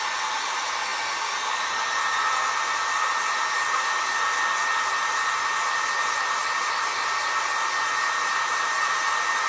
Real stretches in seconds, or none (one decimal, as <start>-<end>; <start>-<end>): 0.0-9.5